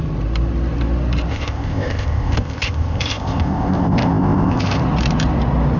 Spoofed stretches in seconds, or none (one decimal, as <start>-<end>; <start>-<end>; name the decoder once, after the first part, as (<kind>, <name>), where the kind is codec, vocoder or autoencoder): 1.3-4.8 (codec, ZipCodec)